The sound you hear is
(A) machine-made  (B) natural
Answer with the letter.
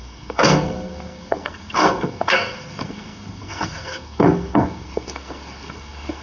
A